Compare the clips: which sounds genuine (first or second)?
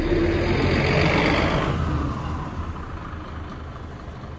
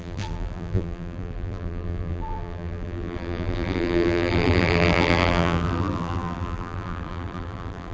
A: first